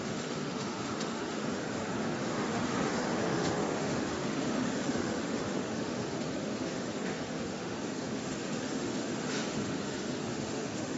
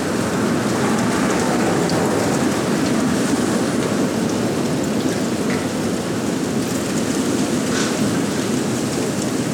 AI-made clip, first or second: first